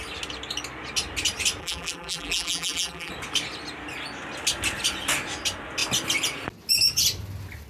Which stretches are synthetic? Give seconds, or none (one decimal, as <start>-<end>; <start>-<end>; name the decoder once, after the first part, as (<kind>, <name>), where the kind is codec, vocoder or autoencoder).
1.6-3.1 (vocoder, BigVGAN v2)